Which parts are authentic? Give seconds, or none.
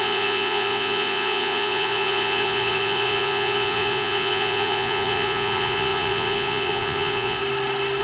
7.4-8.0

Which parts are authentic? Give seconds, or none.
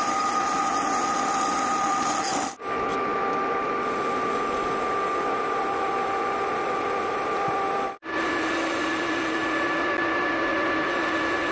0.0-11.5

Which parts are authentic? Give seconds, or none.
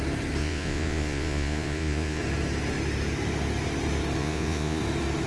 0.0-0.4; 2.2-4.2; 4.8-5.3